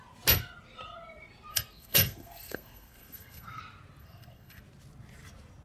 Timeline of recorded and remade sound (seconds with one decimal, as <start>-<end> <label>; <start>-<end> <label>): 0.0-1.5 recorded; 1.5-3.6 remade; 3.6-4.0 recorded; 4.0-4.6 remade; 4.6-5.6 recorded